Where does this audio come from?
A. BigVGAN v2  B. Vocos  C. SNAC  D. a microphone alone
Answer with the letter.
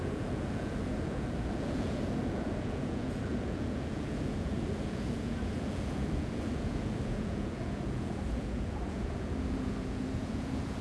B